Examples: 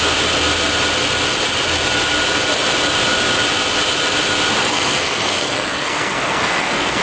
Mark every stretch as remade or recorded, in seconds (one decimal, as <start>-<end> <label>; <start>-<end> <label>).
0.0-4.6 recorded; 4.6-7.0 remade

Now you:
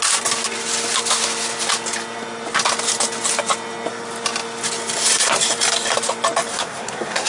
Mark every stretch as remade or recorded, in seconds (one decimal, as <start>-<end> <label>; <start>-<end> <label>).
0.0-6.5 recorded; 6.5-7.3 remade

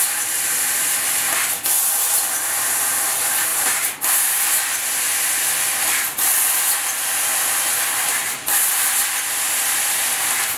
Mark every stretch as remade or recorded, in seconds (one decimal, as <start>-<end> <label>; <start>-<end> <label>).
0.0-10.6 recorded

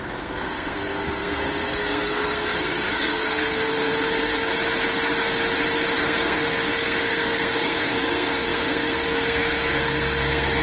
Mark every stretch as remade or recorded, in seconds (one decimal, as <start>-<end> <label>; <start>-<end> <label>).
0.0-4.5 remade; 4.5-6.0 recorded; 6.0-10.6 remade

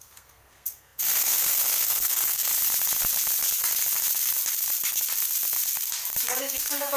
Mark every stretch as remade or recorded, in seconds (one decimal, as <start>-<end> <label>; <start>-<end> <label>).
0.0-2.5 remade; 2.5-6.4 recorded; 6.4-7.0 remade

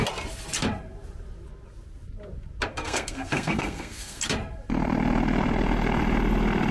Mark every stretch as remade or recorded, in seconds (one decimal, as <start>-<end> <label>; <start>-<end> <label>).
0.0-2.7 recorded; 2.7-4.2 remade; 4.2-6.7 recorded

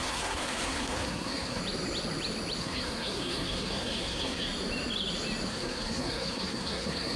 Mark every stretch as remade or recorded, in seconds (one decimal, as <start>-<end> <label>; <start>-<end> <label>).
0.0-1.6 remade; 1.6-2.6 recorded; 2.6-4.5 remade; 4.5-5.5 recorded; 5.5-7.2 remade